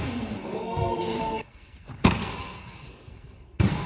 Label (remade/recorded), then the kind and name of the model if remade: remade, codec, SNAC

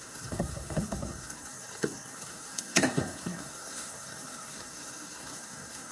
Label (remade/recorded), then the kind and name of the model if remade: remade, codec, SNAC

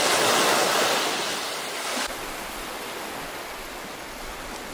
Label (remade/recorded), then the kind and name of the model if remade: recorded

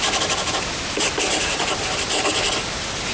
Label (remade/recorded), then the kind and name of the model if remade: recorded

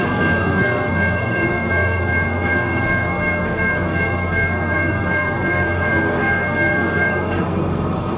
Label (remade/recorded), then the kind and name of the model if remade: remade, codec, SNAC